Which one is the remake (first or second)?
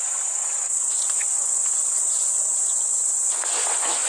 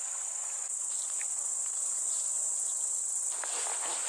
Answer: first